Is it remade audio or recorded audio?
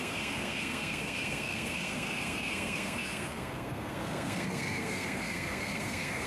remade